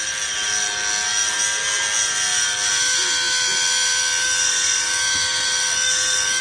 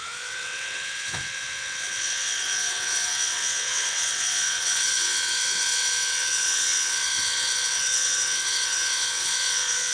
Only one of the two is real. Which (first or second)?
first